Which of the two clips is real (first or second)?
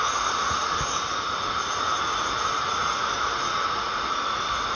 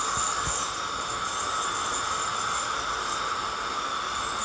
second